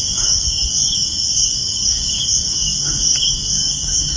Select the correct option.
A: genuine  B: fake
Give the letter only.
B